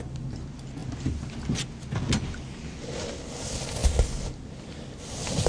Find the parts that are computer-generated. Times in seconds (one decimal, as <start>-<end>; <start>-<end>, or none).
none